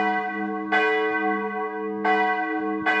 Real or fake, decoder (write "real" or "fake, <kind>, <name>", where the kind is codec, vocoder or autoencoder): real